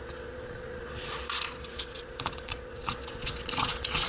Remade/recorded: remade